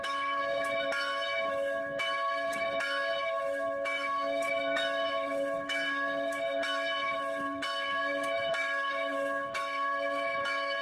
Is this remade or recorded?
remade